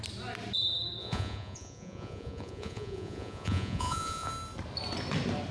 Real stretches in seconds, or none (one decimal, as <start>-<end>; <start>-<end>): 0.0-1.0; 4.3-5.5